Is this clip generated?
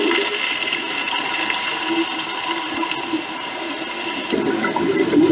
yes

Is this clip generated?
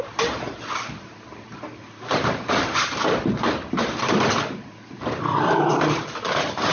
yes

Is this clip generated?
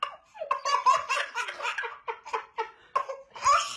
no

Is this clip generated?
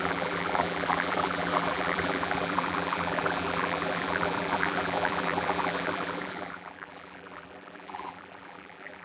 yes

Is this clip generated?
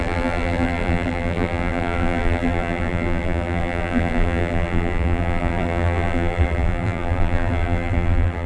yes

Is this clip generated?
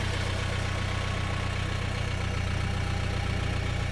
no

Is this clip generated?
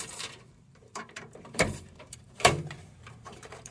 yes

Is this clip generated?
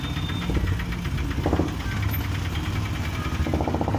no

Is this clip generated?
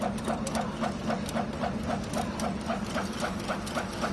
yes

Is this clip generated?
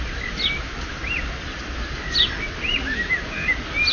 no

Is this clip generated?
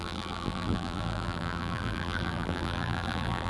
yes